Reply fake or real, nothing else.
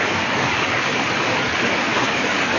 fake